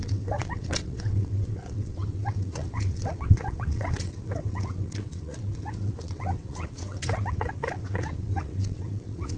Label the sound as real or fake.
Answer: fake